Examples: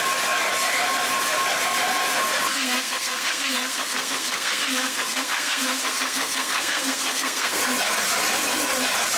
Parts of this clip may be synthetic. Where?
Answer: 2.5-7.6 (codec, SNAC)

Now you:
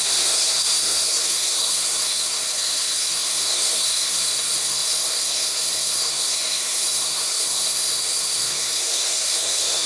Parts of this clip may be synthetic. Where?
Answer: 0.0-9.9 (codec, SNAC)

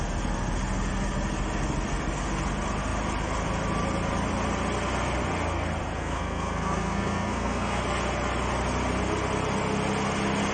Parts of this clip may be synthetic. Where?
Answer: 6.0-7.8 (codec, SNAC)